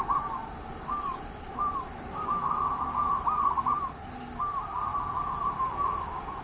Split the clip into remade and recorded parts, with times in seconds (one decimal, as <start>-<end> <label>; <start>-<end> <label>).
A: 0.0-0.4 recorded; 0.4-4.2 remade; 4.2-4.9 recorded; 4.9-6.0 remade; 6.0-6.4 recorded